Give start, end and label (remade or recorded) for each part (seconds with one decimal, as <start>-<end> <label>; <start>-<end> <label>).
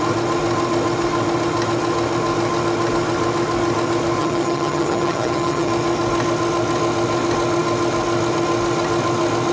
0.0-4.2 recorded; 4.2-5.7 remade; 5.7-9.5 recorded